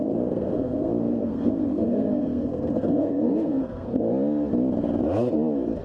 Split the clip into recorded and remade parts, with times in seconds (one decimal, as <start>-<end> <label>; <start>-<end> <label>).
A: 0.0-3.9 remade; 3.9-5.8 recorded